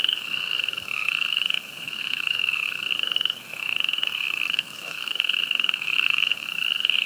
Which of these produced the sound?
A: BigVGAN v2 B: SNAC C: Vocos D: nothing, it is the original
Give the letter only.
B